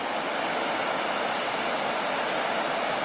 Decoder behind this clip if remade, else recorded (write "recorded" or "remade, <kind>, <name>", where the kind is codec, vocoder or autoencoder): recorded